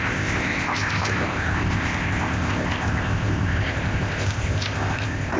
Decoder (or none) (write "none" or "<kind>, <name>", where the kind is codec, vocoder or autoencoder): codec, ZipCodec